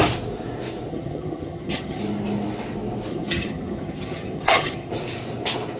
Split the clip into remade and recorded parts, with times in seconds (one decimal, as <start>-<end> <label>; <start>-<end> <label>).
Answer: 0.0-0.9 recorded; 0.9-2.0 remade; 2.0-3.1 recorded; 3.1-4.9 remade; 4.9-5.8 recorded